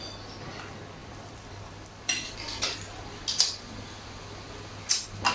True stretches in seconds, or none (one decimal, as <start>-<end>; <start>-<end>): 0.0-1.0; 4.2-5.3